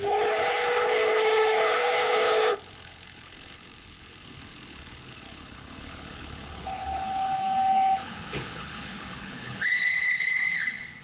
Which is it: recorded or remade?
remade